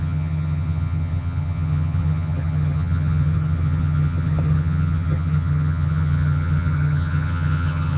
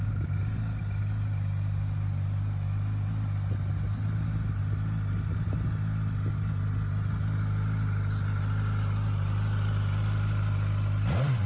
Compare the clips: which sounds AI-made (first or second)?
first